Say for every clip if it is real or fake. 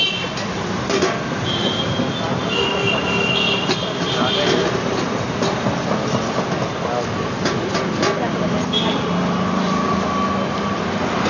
real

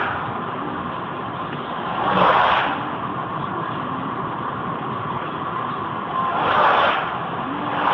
real